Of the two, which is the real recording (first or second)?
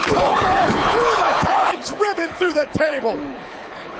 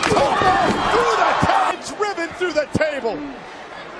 second